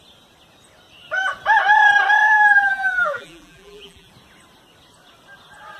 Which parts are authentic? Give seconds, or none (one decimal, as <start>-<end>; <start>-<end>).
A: 0.0-2.2; 4.1-5.8

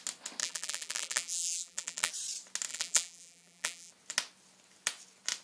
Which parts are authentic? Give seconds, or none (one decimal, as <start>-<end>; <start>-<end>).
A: 0.0-0.4; 2.1-2.7; 3.9-5.4